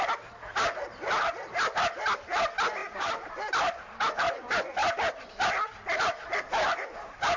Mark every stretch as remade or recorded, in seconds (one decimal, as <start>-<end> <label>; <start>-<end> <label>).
0.0-2.8 recorded; 2.8-3.3 remade; 3.3-7.4 recorded